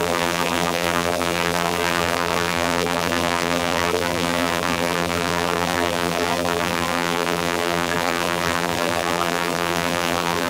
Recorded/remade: remade